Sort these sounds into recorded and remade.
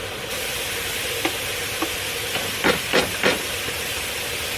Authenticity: recorded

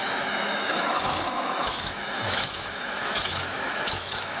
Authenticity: remade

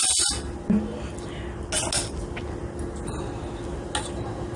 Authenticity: recorded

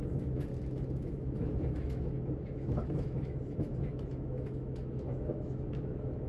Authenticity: remade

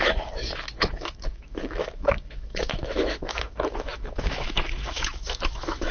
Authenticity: remade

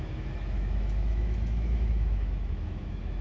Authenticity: remade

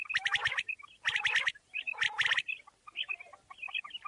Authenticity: recorded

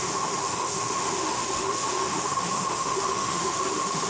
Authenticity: remade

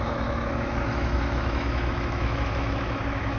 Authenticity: remade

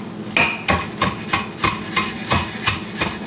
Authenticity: recorded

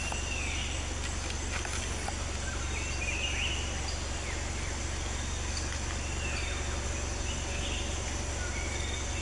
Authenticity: recorded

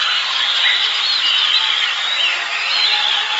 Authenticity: recorded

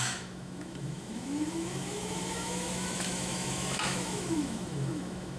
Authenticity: remade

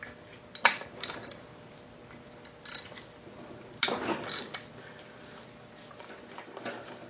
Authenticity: recorded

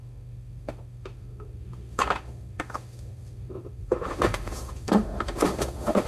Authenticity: remade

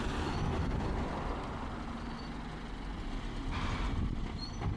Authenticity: recorded